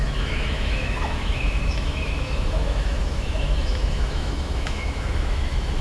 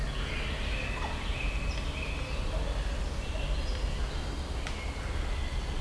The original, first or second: second